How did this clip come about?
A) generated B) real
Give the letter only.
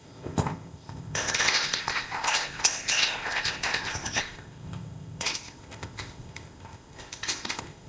A